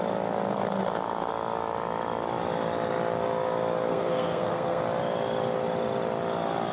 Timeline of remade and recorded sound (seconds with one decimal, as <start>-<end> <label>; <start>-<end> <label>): 0.0-0.5 recorded; 0.5-1.3 remade; 1.3-3.9 recorded; 3.9-4.8 remade; 4.8-6.7 recorded